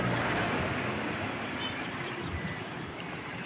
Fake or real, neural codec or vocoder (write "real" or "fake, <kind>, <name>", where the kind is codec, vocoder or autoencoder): real